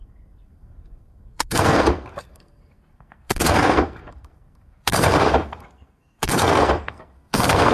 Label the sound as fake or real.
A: fake